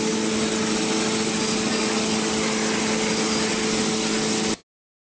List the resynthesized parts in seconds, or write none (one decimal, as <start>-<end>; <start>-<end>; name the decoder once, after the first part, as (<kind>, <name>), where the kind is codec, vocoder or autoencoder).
none